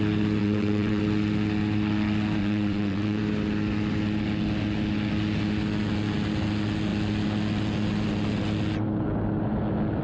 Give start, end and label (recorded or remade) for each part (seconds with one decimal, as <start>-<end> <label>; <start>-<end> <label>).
0.0-0.4 recorded; 0.4-1.0 remade; 1.0-2.4 recorded; 2.4-3.2 remade; 3.2-10.0 recorded